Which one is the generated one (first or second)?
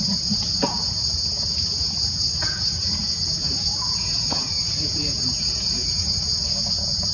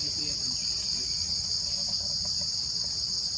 first